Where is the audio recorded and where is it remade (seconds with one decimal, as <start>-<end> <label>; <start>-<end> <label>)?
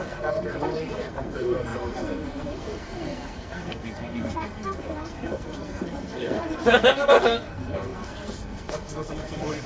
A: 0.0-9.7 remade